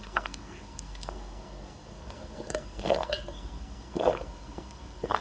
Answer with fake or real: fake